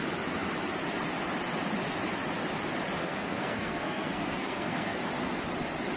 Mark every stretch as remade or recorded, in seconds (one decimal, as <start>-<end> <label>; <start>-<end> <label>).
0.0-3.0 recorded; 3.0-5.0 remade; 5.0-6.0 recorded

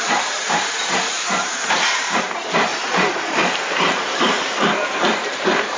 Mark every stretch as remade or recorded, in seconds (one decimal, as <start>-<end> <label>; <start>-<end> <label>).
0.0-5.8 remade

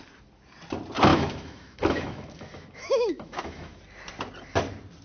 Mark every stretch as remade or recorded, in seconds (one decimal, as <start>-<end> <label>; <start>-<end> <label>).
0.0-1.1 recorded; 1.1-3.8 remade; 3.8-5.0 recorded

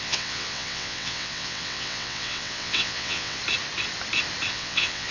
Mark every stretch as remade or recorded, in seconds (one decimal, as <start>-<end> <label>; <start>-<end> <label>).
0.0-3.4 remade; 3.4-4.5 recorded; 4.5-5.1 remade

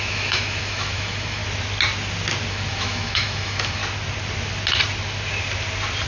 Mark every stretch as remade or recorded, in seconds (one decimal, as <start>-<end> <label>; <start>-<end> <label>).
0.0-1.4 remade; 1.4-2.5 recorded; 2.5-3.8 remade; 3.8-6.1 recorded

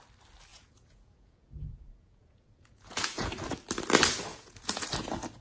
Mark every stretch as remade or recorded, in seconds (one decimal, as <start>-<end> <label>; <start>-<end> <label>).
0.0-0.5 recorded; 0.5-3.3 remade; 3.3-4.3 recorded; 4.3-4.9 remade; 4.9-5.4 recorded